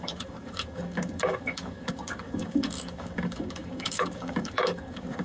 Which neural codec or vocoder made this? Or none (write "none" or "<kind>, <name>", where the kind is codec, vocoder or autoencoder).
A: codec, DAC